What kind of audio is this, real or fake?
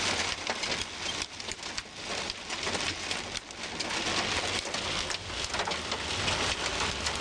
real